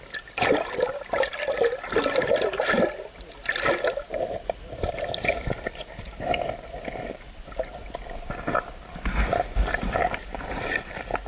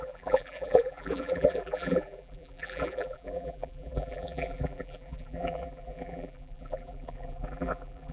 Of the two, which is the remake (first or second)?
second